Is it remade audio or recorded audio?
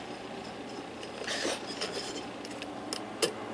recorded